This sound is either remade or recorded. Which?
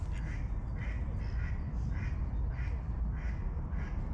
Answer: recorded